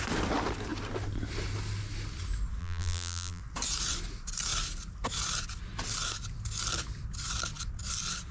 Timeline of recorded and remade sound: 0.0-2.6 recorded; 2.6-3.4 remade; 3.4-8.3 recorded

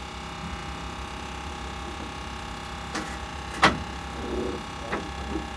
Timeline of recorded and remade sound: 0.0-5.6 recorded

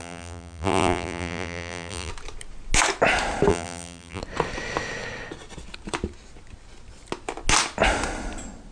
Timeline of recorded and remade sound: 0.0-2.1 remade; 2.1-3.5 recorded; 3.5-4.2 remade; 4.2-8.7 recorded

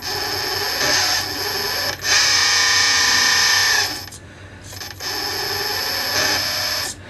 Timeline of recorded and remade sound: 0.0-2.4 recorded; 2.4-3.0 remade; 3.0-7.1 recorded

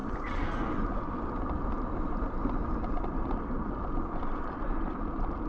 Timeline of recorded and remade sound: 0.0-5.5 recorded

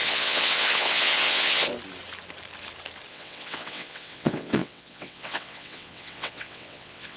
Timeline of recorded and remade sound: 0.0-1.7 remade; 1.7-3.1 recorded; 3.1-7.2 remade

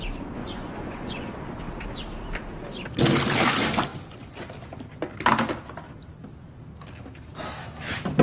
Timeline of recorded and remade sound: 0.0-0.4 recorded; 0.4-1.3 remade; 1.3-3.9 recorded; 3.9-4.5 remade; 4.5-8.2 recorded

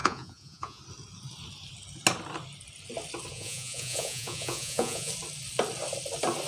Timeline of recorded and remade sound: 0.0-0.8 remade; 0.8-3.3 recorded; 3.3-5.1 remade; 5.1-6.5 recorded